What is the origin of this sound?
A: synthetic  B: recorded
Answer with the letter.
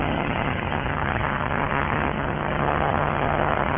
A